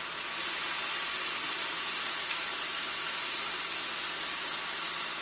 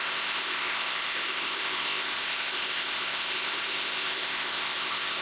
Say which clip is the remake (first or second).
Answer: second